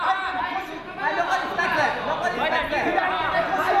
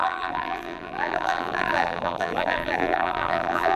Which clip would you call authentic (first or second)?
first